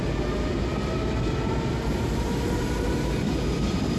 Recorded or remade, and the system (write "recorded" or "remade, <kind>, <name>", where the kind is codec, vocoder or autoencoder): recorded